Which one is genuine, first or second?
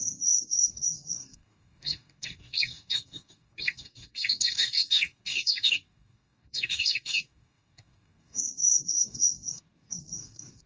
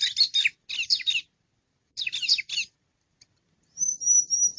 second